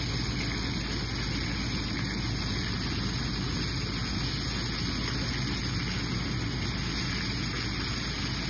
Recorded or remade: recorded